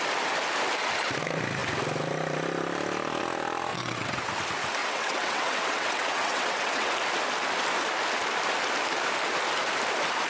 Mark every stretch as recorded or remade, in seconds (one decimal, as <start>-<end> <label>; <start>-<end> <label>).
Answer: 0.0-3.7 recorded; 3.7-4.3 remade; 4.3-4.8 recorded; 4.8-6.9 remade; 6.9-10.3 recorded